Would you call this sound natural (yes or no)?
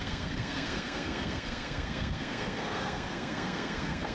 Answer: no